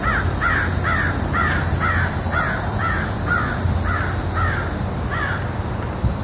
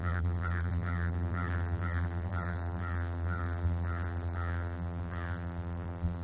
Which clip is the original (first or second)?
first